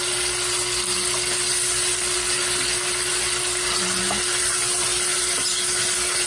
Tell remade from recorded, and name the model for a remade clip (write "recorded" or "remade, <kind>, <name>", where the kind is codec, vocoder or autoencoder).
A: recorded